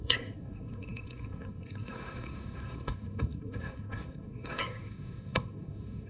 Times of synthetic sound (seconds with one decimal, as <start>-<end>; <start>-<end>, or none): 0.0-6.1